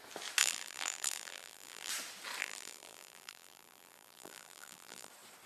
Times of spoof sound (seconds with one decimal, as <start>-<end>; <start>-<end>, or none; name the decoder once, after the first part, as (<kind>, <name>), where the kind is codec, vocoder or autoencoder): 0.4-1.9 (vocoder, BigVGAN v2); 2.4-5.1